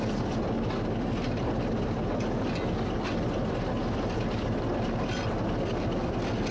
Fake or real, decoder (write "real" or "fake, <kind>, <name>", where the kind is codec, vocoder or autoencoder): real